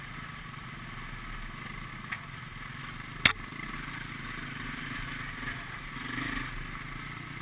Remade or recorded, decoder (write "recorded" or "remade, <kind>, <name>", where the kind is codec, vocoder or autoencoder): recorded